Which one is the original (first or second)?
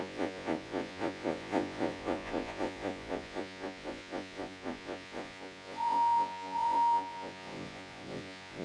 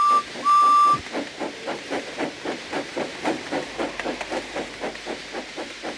second